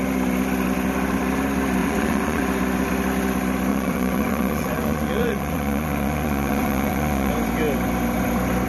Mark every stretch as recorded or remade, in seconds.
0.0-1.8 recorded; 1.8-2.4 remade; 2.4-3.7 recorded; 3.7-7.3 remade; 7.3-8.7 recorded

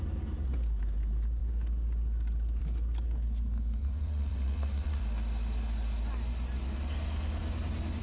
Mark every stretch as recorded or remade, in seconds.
0.0-3.8 recorded; 3.8-5.0 remade; 5.0-8.0 recorded

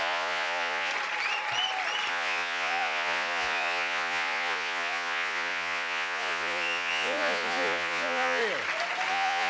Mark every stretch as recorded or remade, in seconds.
0.0-0.9 remade; 0.9-2.1 recorded; 2.1-8.4 remade; 8.4-9.1 recorded; 9.1-9.5 remade

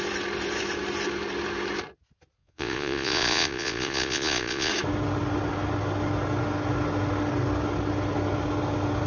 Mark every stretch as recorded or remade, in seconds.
0.0-2.4 recorded; 2.4-4.7 remade; 4.7-9.1 recorded

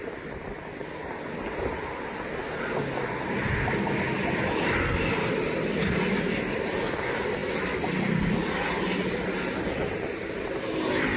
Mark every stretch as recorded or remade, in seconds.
0.0-11.2 recorded

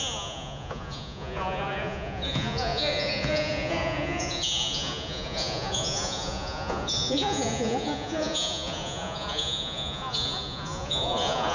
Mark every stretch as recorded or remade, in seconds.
0.0-11.5 remade